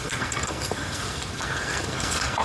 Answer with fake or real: fake